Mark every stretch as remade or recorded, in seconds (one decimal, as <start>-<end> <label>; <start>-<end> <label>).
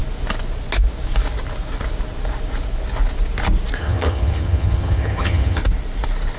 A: 0.0-3.8 recorded; 3.8-5.6 remade; 5.6-6.4 recorded